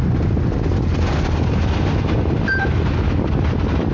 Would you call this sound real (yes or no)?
yes